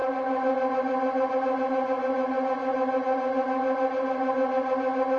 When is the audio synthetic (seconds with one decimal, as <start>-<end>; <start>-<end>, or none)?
none